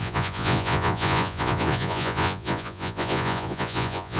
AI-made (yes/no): yes